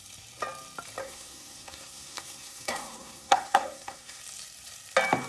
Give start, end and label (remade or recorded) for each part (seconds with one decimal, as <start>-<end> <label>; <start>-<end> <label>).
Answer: 0.0-1.0 recorded; 1.0-4.2 remade; 4.2-5.3 recorded